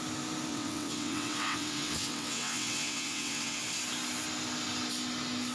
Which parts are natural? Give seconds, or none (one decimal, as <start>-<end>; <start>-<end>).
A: 0.0-0.5; 3.6-5.5